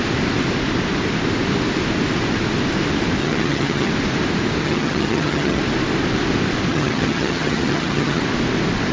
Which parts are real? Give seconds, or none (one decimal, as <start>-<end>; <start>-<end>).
0.0-3.2; 3.9-4.6; 5.6-6.7; 8.2-8.9